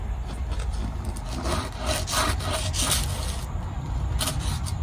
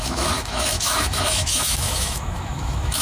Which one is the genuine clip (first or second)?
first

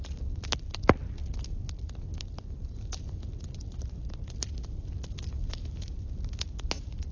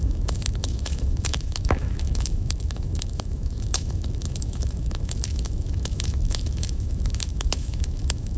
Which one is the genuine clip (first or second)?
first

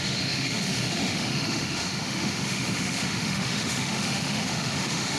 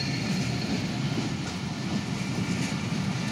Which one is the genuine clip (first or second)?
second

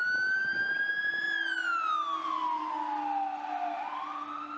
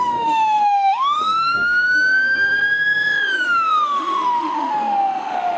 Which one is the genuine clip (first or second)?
first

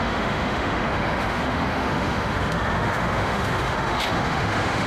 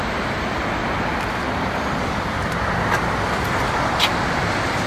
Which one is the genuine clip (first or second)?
second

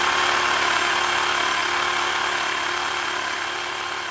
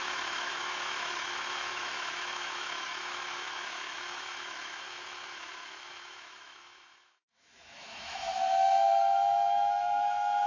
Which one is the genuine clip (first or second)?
first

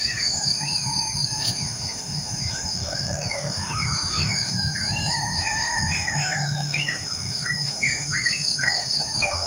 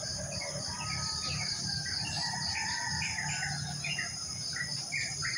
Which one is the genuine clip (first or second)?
second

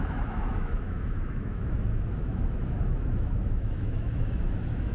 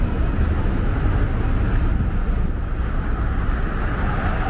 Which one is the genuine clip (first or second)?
second